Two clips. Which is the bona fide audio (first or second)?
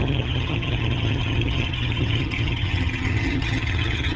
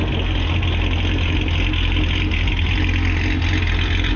second